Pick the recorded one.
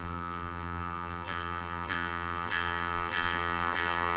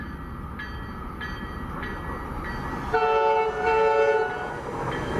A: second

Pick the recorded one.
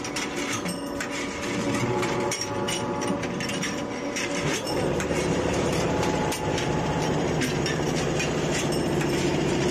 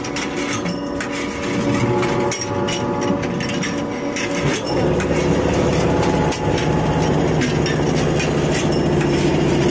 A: second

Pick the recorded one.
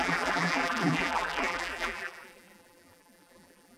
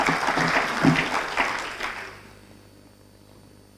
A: second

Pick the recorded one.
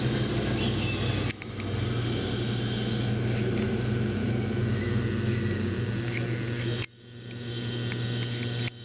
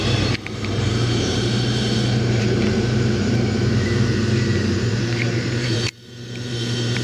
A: first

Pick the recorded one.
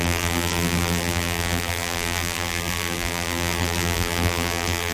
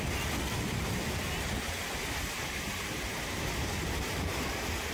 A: second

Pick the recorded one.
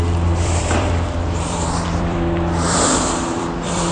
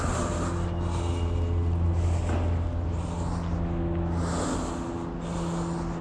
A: second